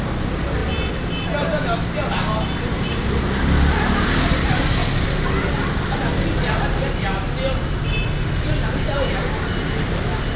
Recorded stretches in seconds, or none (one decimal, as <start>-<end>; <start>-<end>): 0.6-2.6; 4.8-8.4